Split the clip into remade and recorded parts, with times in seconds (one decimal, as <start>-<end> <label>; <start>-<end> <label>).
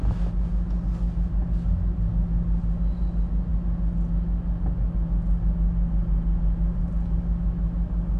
0.0-8.2 recorded